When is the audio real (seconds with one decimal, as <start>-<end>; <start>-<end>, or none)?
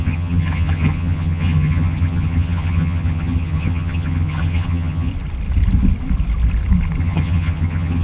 5.1-7.0